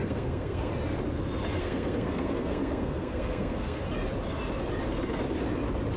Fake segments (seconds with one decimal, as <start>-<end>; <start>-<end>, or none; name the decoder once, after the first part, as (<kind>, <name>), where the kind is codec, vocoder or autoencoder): 0.0-0.7 (codec, SNAC); 1.6-3.8